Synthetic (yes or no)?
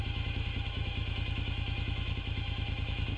yes